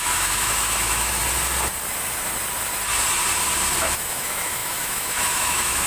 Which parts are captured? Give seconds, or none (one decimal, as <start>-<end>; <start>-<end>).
1.2-3.8